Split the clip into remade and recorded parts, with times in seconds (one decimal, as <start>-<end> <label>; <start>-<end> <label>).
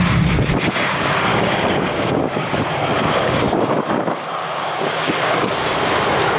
0.0-1.3 recorded; 1.3-2.6 remade; 2.6-3.0 recorded; 3.0-3.8 remade; 3.8-4.4 recorded; 4.4-5.8 remade; 5.8-6.4 recorded